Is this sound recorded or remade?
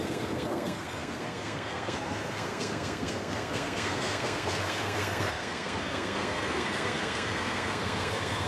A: remade